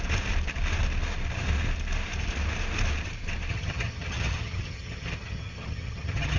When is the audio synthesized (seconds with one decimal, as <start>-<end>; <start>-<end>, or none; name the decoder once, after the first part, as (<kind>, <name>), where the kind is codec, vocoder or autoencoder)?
3.5-6.4 (vocoder, HiFi-GAN)